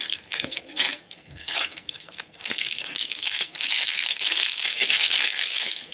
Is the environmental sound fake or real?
fake